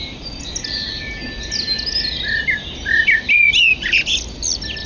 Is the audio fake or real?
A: real